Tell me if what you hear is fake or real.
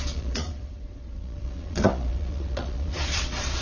fake